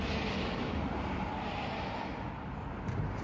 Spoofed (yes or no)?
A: no